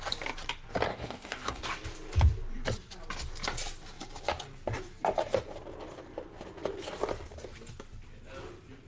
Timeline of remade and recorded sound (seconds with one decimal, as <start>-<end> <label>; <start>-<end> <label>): 0.0-0.9 recorded; 0.9-1.6 remade; 1.6-8.9 recorded